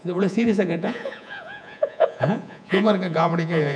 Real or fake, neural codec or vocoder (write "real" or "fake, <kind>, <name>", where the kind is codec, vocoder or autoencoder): fake, vocoder, Vocos